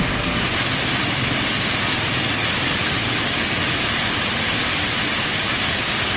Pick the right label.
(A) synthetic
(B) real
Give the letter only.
B